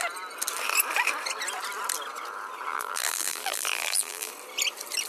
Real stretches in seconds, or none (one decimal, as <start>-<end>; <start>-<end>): 0.0-2.7; 4.3-5.1